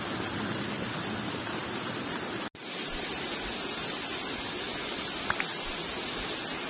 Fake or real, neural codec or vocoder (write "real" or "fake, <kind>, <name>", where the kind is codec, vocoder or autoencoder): real